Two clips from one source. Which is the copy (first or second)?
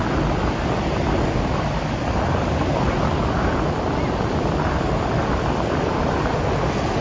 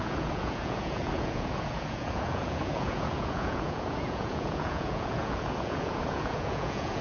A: second